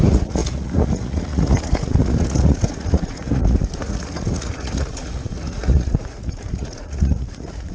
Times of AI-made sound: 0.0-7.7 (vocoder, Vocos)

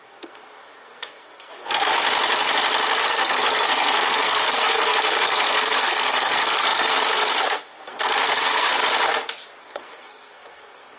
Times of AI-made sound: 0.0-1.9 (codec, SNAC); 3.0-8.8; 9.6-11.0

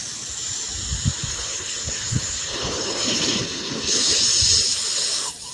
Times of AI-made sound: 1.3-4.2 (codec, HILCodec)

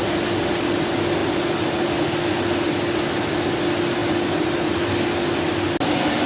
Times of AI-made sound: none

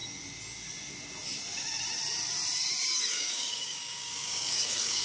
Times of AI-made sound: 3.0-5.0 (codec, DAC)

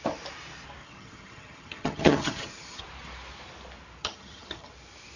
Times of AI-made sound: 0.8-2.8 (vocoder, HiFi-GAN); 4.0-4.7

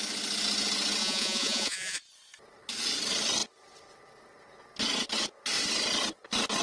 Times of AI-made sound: 1.0-2.0 (vocoder, Vocos)

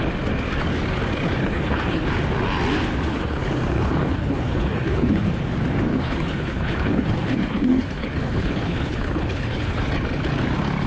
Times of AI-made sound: 1.4-2.1 (codec, HILCodec); 3.1-5.3; 5.9-9.8